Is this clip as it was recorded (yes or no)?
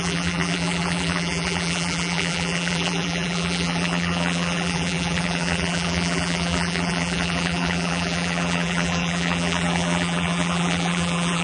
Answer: no